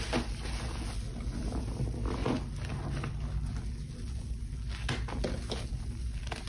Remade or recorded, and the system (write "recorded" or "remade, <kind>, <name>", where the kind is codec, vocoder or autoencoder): recorded